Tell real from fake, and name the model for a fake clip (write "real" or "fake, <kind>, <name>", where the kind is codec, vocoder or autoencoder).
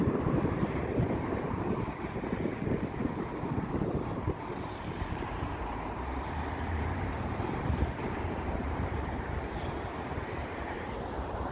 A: fake, vocoder, BigVGAN v2